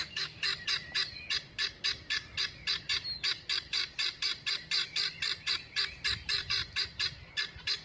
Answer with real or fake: fake